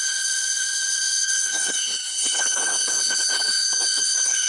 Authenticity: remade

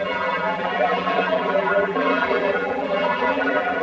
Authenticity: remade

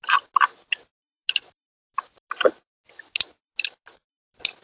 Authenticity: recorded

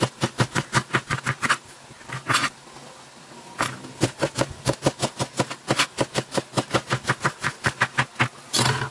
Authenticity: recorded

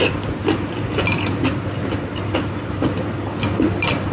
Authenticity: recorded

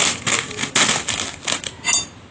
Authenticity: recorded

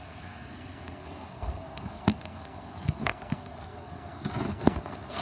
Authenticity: remade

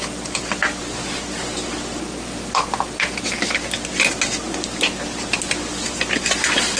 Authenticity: recorded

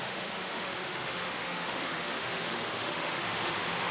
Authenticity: remade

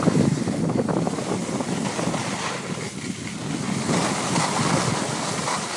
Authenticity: recorded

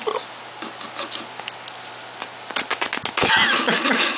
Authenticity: recorded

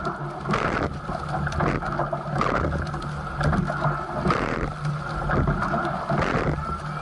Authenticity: recorded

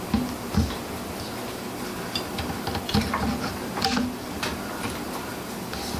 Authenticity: recorded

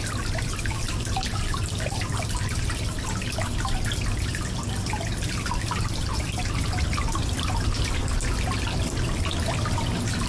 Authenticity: recorded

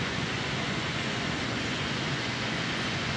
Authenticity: remade